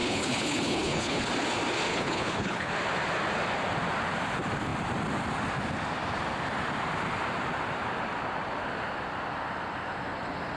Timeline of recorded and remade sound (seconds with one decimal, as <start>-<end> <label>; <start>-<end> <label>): 0.0-1.3 remade; 1.3-1.9 recorded; 1.9-2.7 remade; 2.7-10.6 recorded